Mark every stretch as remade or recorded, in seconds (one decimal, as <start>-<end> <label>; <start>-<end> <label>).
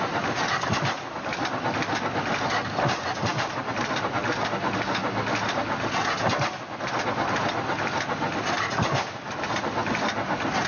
0.0-10.7 recorded